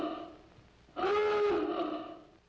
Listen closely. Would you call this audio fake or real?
real